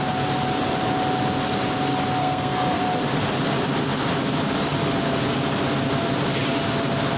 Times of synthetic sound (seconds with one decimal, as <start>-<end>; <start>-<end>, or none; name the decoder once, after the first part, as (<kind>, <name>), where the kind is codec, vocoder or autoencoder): 2.2-2.8 (codec, SNAC)